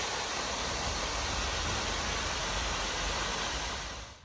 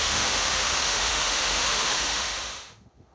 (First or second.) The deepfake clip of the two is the second